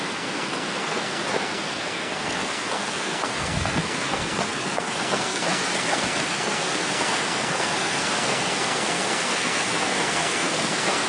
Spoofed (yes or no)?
yes